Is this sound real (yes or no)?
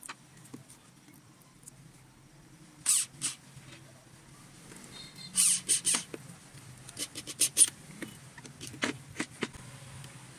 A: yes